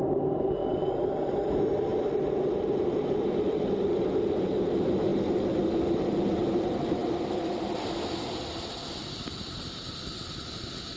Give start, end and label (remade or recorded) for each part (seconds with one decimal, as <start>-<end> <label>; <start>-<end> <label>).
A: 0.0-11.0 recorded

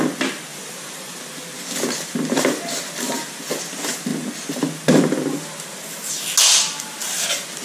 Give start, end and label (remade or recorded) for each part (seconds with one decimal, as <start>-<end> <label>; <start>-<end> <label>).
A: 0.0-0.5 recorded; 0.5-1.2 remade; 1.2-7.6 recorded

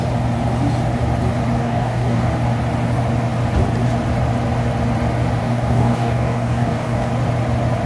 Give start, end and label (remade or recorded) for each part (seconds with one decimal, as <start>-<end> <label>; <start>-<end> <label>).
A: 0.0-1.6 recorded; 1.6-2.3 remade; 2.3-5.4 recorded; 5.4-7.1 remade; 7.1-7.9 recorded

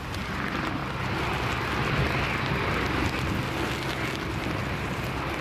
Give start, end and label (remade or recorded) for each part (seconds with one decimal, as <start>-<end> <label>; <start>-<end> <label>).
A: 0.0-5.4 recorded

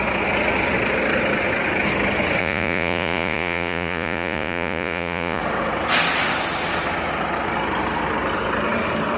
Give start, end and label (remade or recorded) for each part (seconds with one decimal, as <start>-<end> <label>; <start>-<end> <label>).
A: 0.0-2.4 recorded; 2.4-5.4 remade; 5.4-9.2 recorded

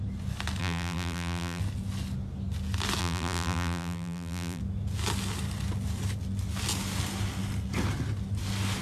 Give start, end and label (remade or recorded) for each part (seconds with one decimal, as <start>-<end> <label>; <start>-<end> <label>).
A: 0.0-0.6 recorded; 0.6-1.6 remade; 1.6-3.0 recorded; 3.0-4.6 remade; 4.6-8.8 recorded

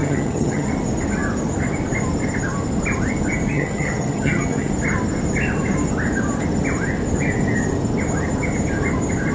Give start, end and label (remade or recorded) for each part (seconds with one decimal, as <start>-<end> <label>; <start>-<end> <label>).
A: 0.0-0.7 remade; 0.7-3.5 recorded; 3.5-4.7 remade; 4.7-9.3 recorded

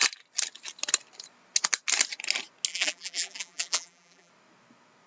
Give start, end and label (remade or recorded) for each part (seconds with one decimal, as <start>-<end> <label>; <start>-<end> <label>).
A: 0.0-2.7 recorded; 2.7-4.3 remade; 4.3-5.1 recorded